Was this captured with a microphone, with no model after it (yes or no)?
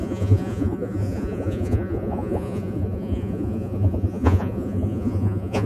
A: no